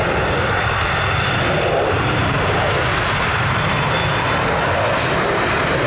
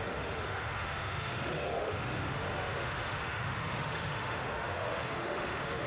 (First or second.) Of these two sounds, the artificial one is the second